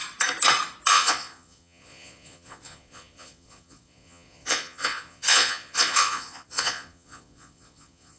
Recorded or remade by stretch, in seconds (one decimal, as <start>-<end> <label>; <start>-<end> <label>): 0.0-0.9 recorded; 0.9-8.2 remade

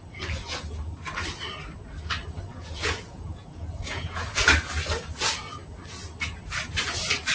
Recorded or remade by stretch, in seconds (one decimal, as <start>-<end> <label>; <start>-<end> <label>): 0.0-2.5 recorded; 2.5-4.2 remade; 4.2-7.3 recorded

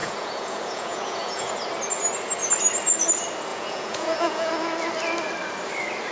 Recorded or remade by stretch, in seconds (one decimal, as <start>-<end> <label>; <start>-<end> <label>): 0.0-1.5 remade; 1.5-3.5 recorded; 3.5-4.5 remade; 4.5-6.1 recorded

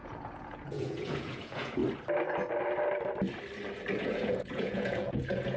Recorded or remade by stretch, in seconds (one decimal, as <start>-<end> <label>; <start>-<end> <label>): 0.0-1.8 remade; 1.8-4.0 recorded; 4.0-5.6 remade

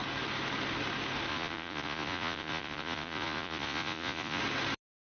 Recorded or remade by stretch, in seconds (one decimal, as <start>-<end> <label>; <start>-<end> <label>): 0.0-1.3 recorded; 1.3-4.4 remade; 4.4-5.1 recorded

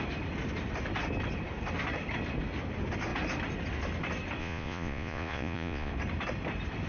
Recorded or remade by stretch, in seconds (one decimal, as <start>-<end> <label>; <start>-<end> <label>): 0.0-4.4 recorded; 4.4-5.9 remade; 5.9-6.9 recorded

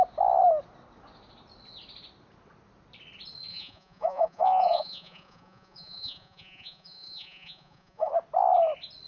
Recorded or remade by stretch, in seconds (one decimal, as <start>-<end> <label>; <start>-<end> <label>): 0.0-3.5 recorded; 3.5-8.1 remade; 8.1-9.1 recorded

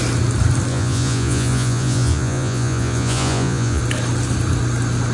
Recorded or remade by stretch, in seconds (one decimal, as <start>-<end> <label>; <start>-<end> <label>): 0.0-0.7 recorded; 0.7-3.8 remade; 3.8-5.1 recorded